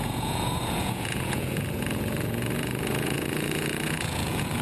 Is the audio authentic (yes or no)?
no